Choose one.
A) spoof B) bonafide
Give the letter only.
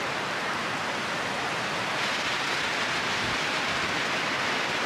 B